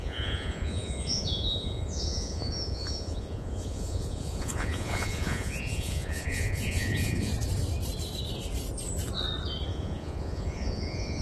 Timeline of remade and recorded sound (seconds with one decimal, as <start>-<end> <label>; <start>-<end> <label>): 0.0-7.3 remade; 7.3-9.7 recorded; 9.7-11.2 remade